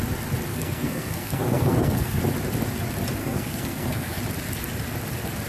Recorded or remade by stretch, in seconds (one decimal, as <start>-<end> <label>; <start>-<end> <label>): 0.0-0.5 recorded; 0.5-2.2 remade; 2.2-3.2 recorded; 3.2-4.2 remade; 4.2-5.5 recorded